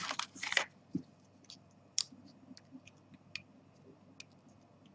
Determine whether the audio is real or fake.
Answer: real